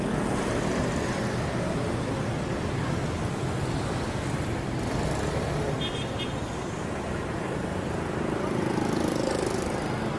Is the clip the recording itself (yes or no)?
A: yes